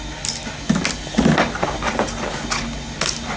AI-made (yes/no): no